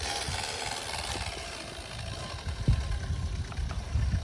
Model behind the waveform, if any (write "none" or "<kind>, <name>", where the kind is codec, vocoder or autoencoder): none